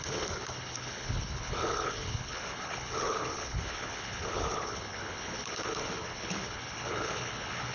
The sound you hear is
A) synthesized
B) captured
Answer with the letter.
A